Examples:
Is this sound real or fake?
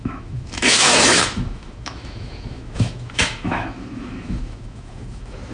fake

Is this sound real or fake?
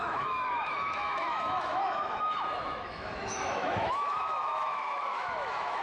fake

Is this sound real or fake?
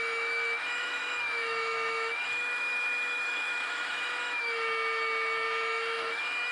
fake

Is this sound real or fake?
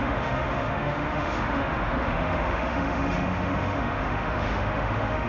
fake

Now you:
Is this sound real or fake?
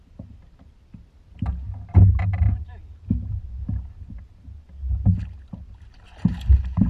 real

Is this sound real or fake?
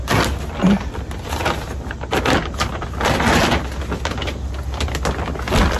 real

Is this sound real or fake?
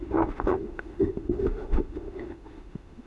fake